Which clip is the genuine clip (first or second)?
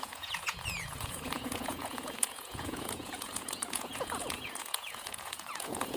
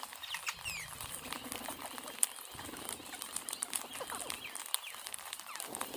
second